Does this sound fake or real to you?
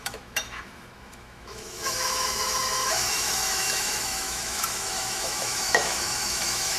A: fake